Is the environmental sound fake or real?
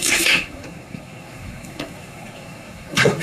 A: fake